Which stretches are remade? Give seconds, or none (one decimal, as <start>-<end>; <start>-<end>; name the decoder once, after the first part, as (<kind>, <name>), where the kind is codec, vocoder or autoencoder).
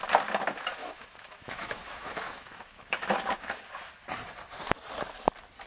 0.8-3.6 (autoencoder, DAC-VAE)